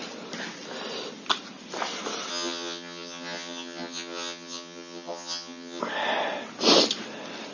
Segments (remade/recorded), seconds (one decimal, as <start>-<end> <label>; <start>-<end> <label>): 0.0-2.3 recorded; 2.3-5.8 remade; 5.8-7.5 recorded